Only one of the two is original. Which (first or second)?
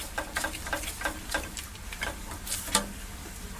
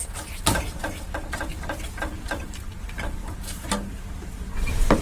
first